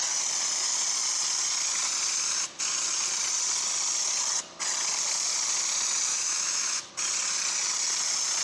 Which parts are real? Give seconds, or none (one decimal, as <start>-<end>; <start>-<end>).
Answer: 0.0-6.1; 6.9-8.4